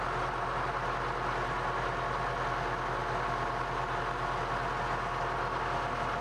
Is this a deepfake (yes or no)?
no